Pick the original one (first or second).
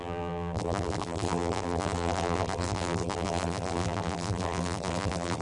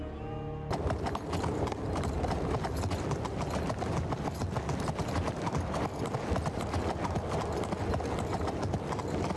second